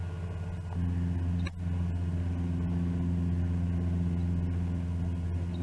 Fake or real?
real